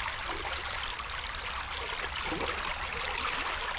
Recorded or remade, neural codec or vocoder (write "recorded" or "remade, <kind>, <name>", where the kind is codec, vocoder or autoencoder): recorded